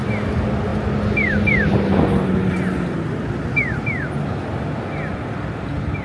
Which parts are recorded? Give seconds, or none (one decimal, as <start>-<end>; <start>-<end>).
0.0-6.0